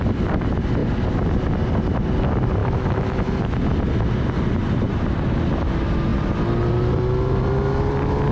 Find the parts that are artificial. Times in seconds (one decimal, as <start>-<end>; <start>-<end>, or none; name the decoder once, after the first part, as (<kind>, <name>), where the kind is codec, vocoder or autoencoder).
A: 2.6-3.2 (autoencoder, DAC-VAE)